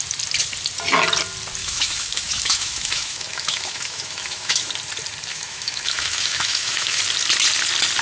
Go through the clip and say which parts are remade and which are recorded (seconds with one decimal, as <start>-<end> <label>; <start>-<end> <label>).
0.0-1.6 recorded; 1.6-4.7 remade; 4.7-5.3 recorded; 5.3-7.0 remade; 7.0-8.0 recorded